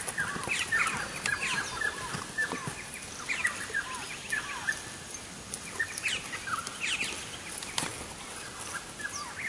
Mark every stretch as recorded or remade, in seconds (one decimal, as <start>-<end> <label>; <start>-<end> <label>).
0.0-2.6 recorded; 2.6-3.1 remade; 3.1-9.5 recorded